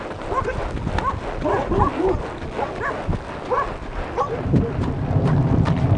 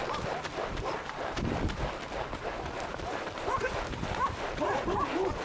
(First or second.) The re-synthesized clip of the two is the second